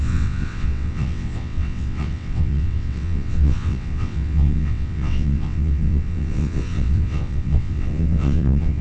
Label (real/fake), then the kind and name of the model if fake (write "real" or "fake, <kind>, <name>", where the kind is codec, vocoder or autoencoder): fake, vocoder, WaveNeXt